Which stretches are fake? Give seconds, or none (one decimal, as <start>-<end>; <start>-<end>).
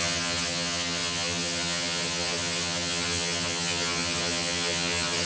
0.0-5.3